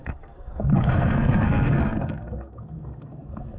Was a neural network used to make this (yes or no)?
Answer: yes